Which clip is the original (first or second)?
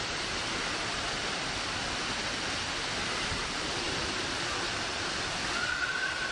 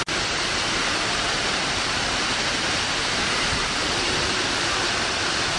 second